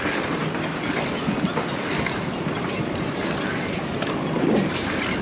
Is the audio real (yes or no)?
no